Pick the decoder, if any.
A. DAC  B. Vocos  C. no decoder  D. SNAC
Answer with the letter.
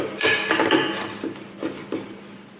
C